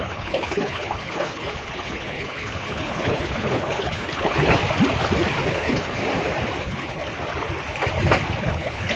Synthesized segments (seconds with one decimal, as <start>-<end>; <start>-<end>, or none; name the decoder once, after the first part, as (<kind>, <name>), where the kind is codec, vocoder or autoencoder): 0.0-4.6 (codec, HILCodec); 5.5-6.0; 6.6-7.0; 8.4-9.0